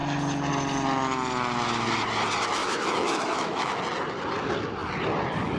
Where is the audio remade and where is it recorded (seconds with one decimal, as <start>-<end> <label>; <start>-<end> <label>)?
0.0-2.6 recorded; 2.6-3.8 remade; 3.8-5.6 recorded